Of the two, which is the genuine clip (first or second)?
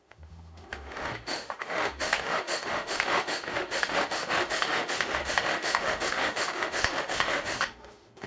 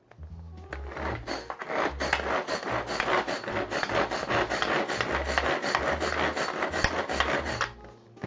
second